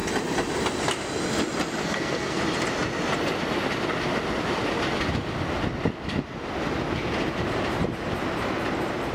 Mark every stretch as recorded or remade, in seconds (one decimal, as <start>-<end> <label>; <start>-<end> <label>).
0.0-1.8 recorded; 1.8-2.4 remade; 2.4-9.1 recorded